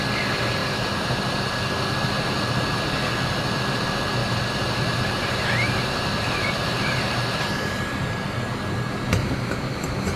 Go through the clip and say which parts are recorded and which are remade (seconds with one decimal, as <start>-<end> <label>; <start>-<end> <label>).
0.0-0.6 recorded; 0.6-1.2 remade; 1.2-4.2 recorded; 4.2-8.4 remade; 8.4-9.2 recorded; 9.2-10.2 remade